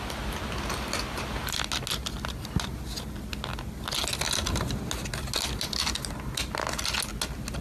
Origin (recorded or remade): recorded